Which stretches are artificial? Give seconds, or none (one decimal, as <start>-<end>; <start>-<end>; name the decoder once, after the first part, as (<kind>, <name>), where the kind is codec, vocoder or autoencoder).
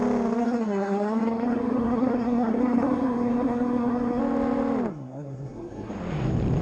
0.4-4.2 (codec, SNAC); 4.9-5.9